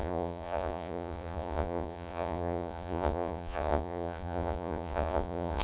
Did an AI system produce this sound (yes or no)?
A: yes